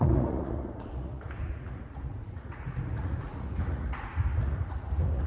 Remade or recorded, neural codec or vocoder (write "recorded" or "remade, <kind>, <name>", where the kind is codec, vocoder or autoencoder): remade, vocoder, Vocos